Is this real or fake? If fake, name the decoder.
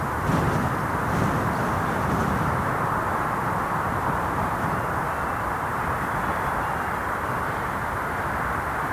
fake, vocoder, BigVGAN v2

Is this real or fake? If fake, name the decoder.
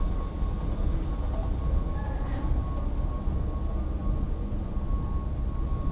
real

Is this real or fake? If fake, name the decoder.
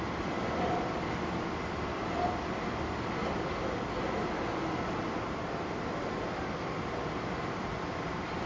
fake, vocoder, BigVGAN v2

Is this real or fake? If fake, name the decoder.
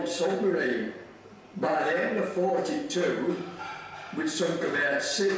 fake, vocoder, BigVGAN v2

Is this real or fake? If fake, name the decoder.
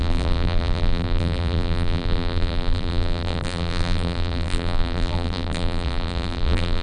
fake, vocoder, BigVGAN v2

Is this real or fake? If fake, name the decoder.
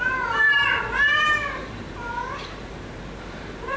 fake, vocoder, BigVGAN v2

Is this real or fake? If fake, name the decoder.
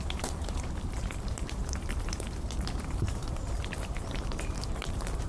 fake, vocoder, BigVGAN v2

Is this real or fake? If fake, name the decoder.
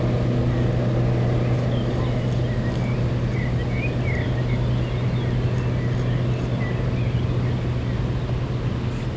real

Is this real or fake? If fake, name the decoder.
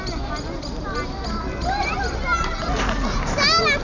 real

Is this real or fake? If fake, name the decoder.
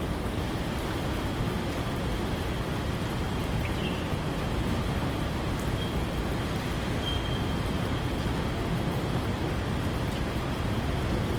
real